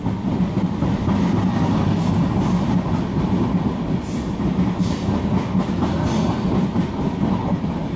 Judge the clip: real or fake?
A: real